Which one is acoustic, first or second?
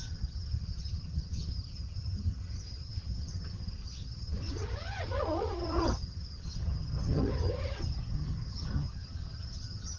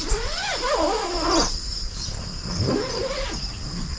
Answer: second